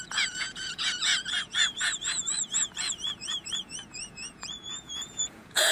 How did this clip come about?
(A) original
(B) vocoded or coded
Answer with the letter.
B